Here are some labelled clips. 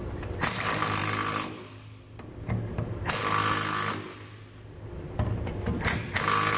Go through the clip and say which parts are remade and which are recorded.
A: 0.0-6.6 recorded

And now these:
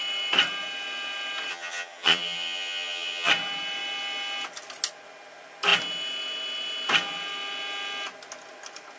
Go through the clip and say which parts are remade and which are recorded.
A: 0.0-1.5 recorded; 1.5-3.3 remade; 3.3-9.0 recorded

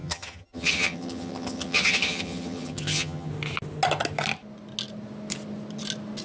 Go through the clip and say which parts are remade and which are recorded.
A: 0.0-3.3 remade; 3.3-6.2 recorded